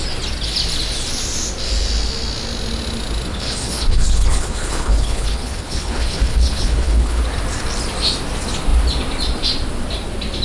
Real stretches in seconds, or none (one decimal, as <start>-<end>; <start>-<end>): 0.0-3.3; 7.2-10.4